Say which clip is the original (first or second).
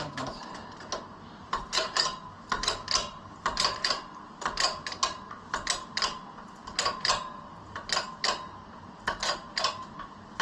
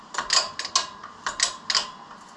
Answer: second